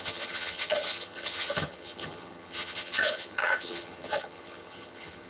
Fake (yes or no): yes